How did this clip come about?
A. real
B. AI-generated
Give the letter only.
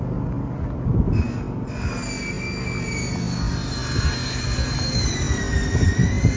A